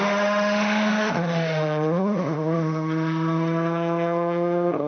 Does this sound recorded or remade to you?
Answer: remade